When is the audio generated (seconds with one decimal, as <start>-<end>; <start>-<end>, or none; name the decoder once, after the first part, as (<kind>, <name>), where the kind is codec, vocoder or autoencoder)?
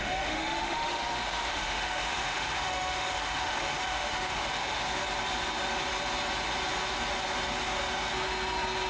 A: 0.0-4.8 (autoencoder, DAC-VAE)